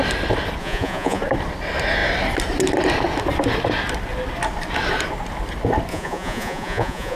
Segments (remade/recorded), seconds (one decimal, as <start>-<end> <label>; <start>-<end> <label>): 0.0-0.6 recorded; 0.6-1.2 remade; 1.2-5.9 recorded; 5.9-7.2 remade